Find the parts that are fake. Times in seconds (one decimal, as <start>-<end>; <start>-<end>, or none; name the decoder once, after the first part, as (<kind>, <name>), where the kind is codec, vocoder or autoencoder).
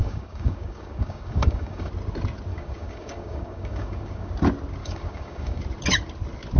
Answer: 0.0-1.9 (codec, DAC); 2.5-4.3; 4.8-5.6